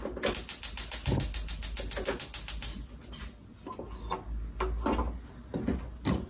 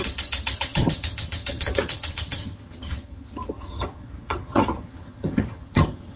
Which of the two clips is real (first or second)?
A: first